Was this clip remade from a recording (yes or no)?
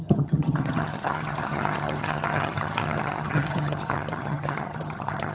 yes